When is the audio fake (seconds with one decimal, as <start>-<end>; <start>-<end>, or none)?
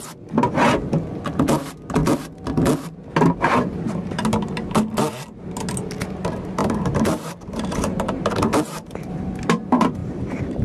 6.6-9.6; 10.0-10.6